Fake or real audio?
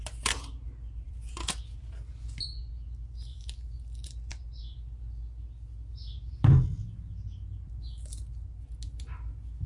real